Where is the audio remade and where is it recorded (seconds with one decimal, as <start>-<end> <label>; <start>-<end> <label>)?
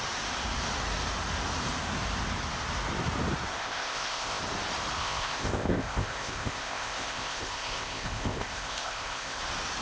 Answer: 0.0-3.6 recorded; 3.6-4.4 remade; 4.4-5.0 recorded; 5.0-9.4 remade; 9.4-9.8 recorded